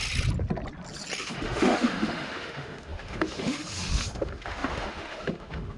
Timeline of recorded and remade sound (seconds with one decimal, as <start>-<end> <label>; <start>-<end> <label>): 0.0-1.2 recorded; 1.2-5.8 remade